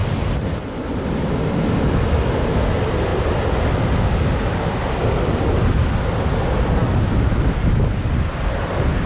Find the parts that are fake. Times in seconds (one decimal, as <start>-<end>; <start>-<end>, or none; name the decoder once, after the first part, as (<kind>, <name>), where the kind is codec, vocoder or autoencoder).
none